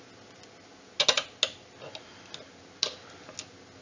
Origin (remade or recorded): recorded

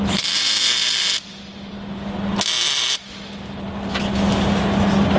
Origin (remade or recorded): remade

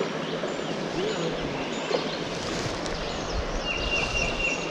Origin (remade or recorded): recorded